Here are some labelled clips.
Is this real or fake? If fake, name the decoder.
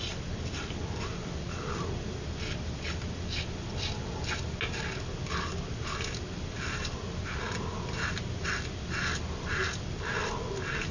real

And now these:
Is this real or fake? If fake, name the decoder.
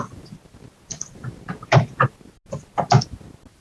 real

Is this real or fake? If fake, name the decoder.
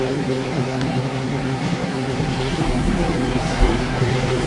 fake, codec, SNAC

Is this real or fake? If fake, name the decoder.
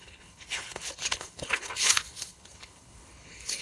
fake, codec, HILCodec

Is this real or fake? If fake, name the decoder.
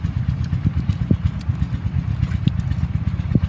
real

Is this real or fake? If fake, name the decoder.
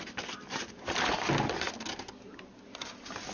real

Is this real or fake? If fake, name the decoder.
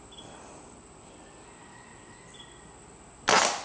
real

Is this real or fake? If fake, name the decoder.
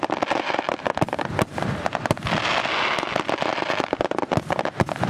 real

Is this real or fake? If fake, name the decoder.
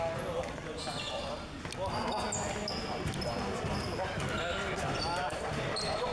real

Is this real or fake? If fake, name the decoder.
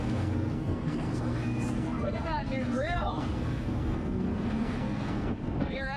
fake, codec, SNAC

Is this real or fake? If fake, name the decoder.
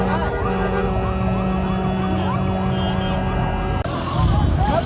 real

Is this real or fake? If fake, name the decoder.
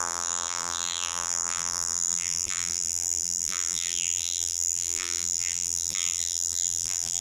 fake, vocoder, BigVGAN v2